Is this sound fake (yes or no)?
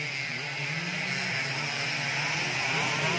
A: no